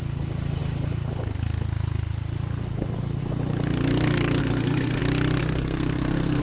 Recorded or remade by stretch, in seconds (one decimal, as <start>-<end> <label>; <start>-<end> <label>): 0.0-4.4 recorded; 4.4-5.0 remade; 5.0-5.4 recorded; 5.4-6.4 remade